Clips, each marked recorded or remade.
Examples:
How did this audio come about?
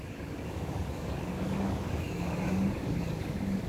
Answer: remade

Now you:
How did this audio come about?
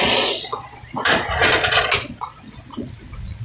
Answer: remade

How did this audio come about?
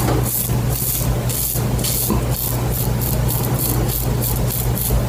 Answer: recorded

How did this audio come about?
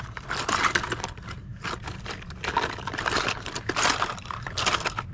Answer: recorded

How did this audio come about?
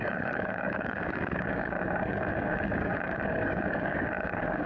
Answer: remade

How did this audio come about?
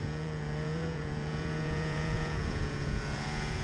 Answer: remade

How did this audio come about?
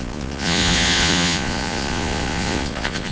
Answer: remade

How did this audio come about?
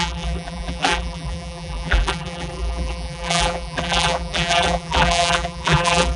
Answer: remade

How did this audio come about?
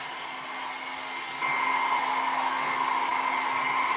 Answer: recorded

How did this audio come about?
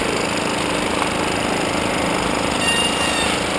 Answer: recorded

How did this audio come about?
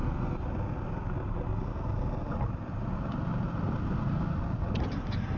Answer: recorded